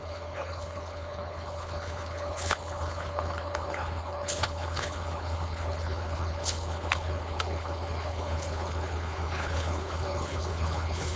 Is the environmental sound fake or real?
fake